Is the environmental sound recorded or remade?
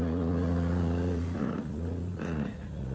remade